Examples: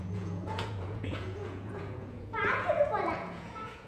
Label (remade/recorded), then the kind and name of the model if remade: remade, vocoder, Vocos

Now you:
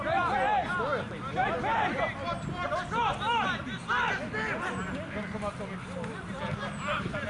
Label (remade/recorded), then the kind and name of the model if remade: recorded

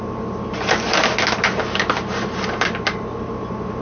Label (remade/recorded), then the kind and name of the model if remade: recorded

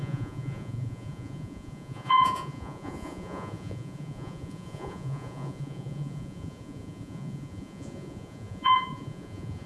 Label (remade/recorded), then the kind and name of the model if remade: remade, vocoder, Vocos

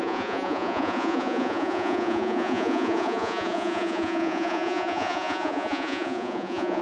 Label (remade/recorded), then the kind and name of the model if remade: remade, vocoder, Vocos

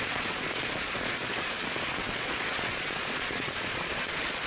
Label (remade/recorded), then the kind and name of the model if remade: remade, vocoder, Vocos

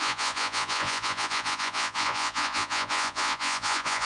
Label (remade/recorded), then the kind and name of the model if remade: remade, vocoder, Vocos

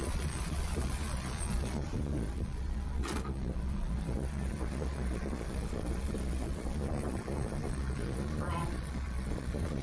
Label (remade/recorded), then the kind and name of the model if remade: remade, vocoder, Vocos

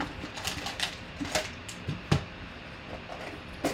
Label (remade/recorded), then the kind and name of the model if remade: recorded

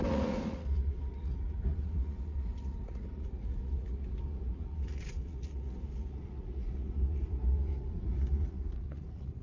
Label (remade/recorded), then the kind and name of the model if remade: remade, vocoder, Vocos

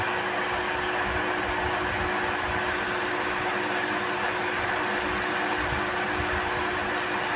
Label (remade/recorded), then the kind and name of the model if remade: recorded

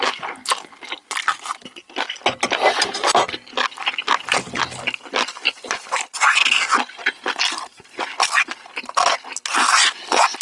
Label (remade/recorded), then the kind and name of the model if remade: recorded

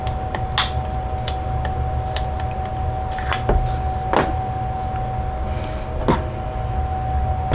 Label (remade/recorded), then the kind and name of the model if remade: recorded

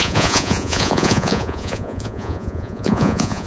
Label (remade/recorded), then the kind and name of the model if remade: remade, vocoder, Vocos